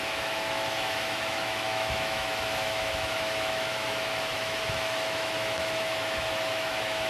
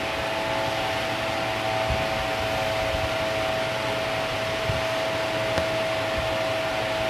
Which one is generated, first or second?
first